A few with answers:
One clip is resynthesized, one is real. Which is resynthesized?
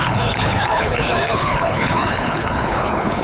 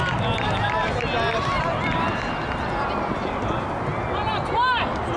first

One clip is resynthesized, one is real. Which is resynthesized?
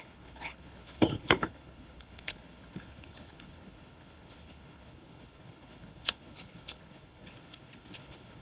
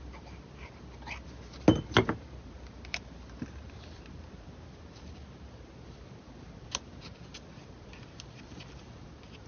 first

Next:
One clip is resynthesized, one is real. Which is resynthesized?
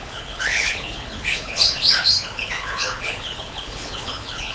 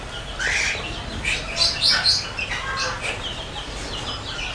first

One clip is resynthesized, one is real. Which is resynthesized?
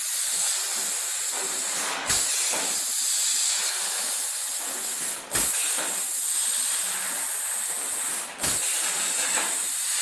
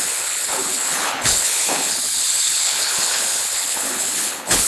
second